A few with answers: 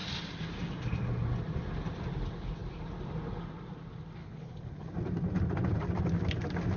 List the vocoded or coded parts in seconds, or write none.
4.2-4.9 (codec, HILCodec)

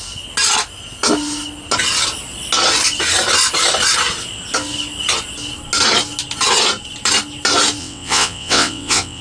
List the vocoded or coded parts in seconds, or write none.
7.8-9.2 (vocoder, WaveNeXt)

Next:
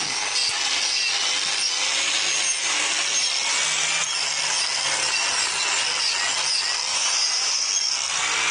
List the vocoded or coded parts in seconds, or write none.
6.9-7.7 (vocoder, Vocos)

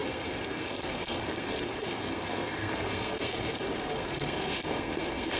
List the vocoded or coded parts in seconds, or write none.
0.0-5.4 (codec, SNAC)